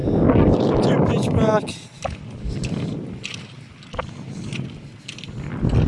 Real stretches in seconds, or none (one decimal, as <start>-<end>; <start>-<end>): 0.0-5.9